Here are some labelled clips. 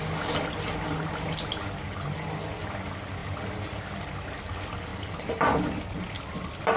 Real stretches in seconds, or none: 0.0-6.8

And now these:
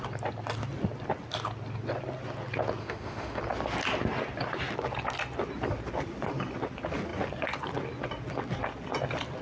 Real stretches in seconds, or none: 0.0-2.8; 3.4-9.4

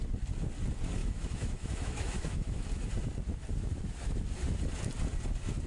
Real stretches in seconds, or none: 0.0-1.0; 2.9-5.7

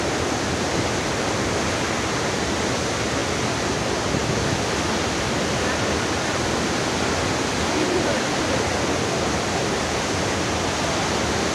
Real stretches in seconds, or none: 0.0-11.5

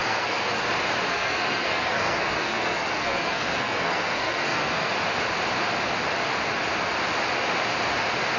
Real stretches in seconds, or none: 0.6-1.1; 4.9-8.4

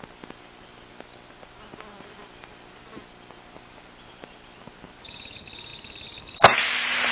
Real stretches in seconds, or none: 0.0-7.1

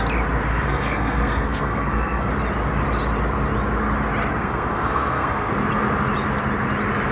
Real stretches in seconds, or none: 0.0-0.5; 2.3-4.4; 5.5-7.1